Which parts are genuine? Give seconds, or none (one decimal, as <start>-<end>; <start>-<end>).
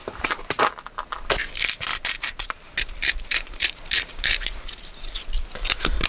0.6-1.9; 5.1-6.1